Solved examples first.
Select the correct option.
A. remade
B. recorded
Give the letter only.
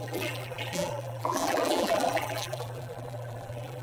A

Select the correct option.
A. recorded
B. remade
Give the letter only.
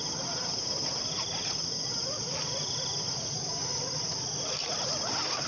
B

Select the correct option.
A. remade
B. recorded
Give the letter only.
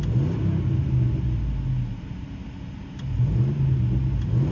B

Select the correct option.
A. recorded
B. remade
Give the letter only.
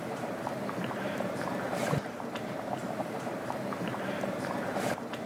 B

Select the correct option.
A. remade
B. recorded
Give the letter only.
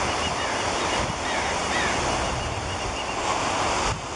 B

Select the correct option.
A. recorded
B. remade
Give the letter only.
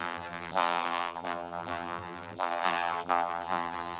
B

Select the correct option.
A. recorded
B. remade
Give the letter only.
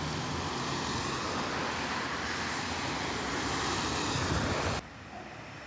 A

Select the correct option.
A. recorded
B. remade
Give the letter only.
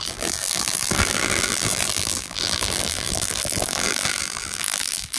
B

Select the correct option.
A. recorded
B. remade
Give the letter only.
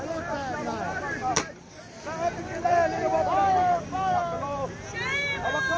B